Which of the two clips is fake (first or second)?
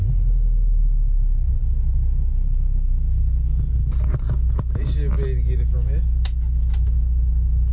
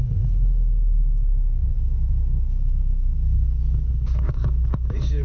second